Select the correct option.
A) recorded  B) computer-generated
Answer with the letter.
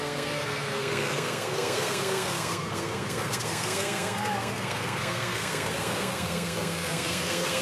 B